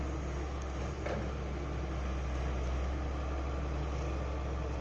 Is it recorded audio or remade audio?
recorded